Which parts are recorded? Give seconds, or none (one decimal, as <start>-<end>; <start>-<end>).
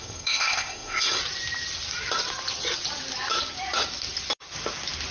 1.2-5.1